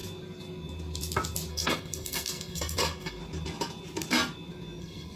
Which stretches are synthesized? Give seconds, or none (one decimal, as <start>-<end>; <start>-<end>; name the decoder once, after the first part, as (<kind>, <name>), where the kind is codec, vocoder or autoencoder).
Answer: 1.5-3.2 (codec, SNAC); 4.8-5.2

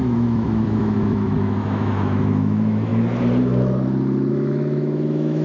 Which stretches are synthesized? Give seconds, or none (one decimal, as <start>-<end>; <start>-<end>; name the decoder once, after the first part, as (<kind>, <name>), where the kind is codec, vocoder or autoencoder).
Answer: 0.0-2.9 (autoencoder, DAC-VAE); 4.3-5.4

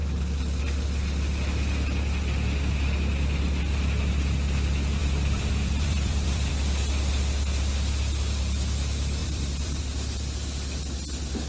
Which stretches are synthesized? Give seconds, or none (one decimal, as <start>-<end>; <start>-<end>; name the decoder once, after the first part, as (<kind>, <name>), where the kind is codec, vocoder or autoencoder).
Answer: 5.0-6.5 (vocoder, BigVGAN v2); 9.2-9.8